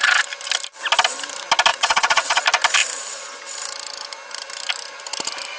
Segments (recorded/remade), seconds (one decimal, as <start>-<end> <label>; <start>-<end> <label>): 0.0-1.7 recorded; 1.7-2.4 remade; 2.4-5.6 recorded